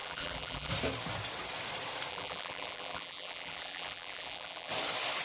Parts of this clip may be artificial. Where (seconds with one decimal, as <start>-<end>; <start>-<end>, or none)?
0.0-0.7; 2.1-4.7